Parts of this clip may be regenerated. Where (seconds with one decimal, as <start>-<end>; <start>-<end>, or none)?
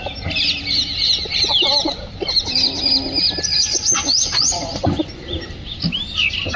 3.5-5.2